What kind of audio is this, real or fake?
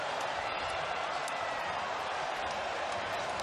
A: fake